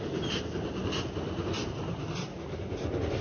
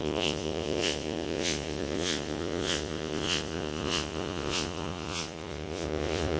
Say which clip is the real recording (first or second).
first